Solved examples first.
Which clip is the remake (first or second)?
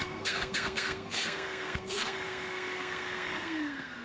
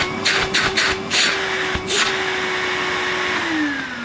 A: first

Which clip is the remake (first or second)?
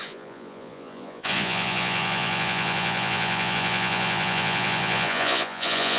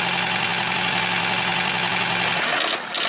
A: first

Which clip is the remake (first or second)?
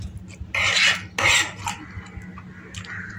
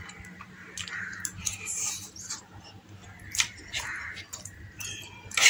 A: second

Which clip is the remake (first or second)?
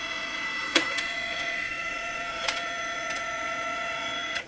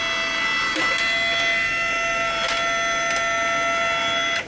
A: first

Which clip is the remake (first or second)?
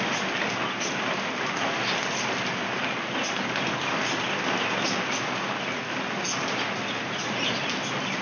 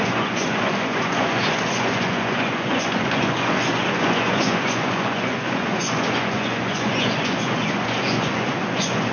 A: second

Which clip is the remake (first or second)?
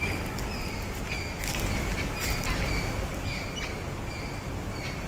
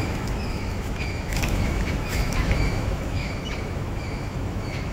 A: second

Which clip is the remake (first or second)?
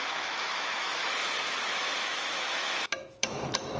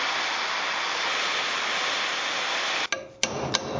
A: first